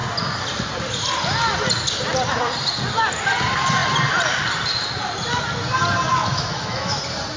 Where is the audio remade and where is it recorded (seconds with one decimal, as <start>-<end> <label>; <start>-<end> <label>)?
0.0-6.1 recorded; 6.1-7.0 remade; 7.0-7.4 recorded